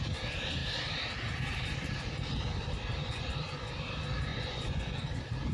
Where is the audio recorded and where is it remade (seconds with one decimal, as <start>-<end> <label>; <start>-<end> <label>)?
0.0-3.0 recorded; 3.0-3.7 remade; 3.7-4.3 recorded; 4.3-5.0 remade; 5.0-5.5 recorded